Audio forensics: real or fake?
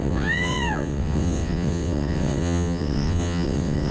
fake